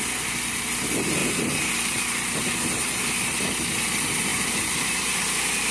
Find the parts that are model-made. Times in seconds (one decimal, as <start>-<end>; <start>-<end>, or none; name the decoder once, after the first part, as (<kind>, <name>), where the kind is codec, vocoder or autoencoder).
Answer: 1.2-2.5 (vocoder, BigVGAN v2)

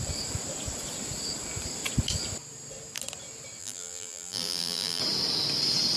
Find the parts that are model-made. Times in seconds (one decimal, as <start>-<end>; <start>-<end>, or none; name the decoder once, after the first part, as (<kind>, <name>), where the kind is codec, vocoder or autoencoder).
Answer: 3.6-5.0 (vocoder, BigVGAN v2)

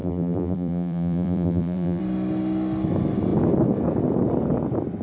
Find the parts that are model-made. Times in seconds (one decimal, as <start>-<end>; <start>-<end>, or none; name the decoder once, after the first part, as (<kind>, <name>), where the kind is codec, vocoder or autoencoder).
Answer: 0.0-2.0 (vocoder, BigVGAN v2)

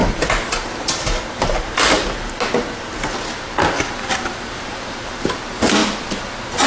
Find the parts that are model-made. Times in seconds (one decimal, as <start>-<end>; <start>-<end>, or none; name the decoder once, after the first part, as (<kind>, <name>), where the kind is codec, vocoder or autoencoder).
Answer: 0.8-2.0 (vocoder, BigVGAN v2); 3.8-5.8

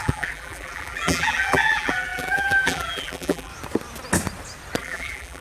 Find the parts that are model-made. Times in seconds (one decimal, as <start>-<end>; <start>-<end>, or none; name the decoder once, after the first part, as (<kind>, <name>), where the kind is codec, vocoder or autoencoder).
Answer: 0.0-3.5 (vocoder, BigVGAN v2); 4.8-5.4

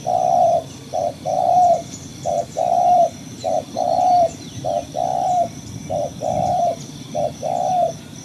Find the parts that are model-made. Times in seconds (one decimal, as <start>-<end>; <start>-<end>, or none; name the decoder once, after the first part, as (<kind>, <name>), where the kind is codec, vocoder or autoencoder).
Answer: 0.0-2.1 (vocoder, BigVGAN v2); 2.6-8.2

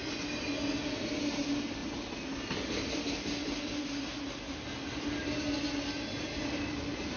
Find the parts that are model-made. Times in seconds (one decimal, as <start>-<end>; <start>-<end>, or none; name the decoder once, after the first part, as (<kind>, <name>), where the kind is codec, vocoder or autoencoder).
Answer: none

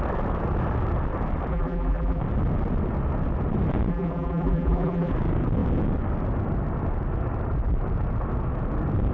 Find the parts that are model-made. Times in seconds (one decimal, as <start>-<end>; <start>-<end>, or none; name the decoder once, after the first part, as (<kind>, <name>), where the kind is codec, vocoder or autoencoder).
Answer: 1.5-2.2 (vocoder, BigVGAN v2); 3.9-5.1